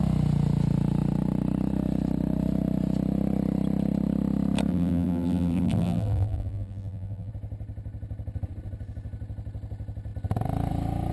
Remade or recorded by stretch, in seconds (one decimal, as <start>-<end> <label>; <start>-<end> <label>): 0.0-4.7 recorded; 4.7-7.3 remade; 7.3-11.1 recorded